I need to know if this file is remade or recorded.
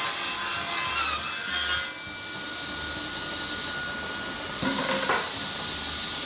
recorded